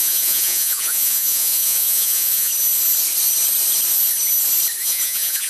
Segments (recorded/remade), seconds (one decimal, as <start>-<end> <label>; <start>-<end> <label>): 0.0-2.5 remade; 2.5-4.8 recorded; 4.8-5.5 remade